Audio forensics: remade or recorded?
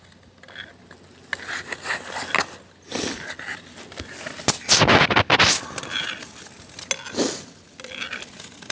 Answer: recorded